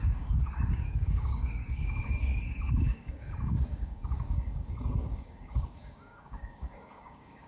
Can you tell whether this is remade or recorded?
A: remade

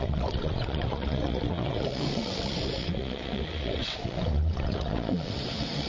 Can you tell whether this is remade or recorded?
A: remade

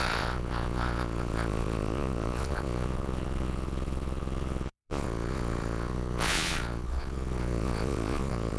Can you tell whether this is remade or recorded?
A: remade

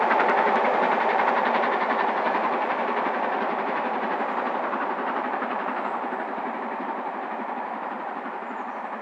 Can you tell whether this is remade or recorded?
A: remade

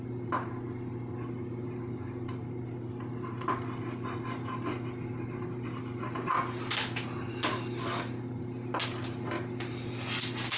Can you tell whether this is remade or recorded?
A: recorded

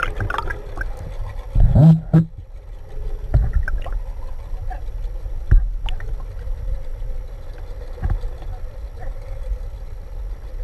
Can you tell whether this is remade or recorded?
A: recorded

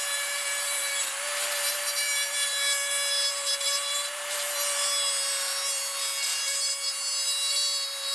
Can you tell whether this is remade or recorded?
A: remade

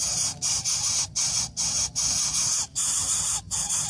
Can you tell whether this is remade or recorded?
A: recorded